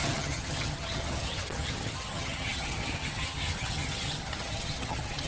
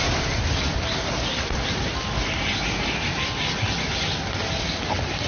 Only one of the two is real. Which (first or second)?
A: second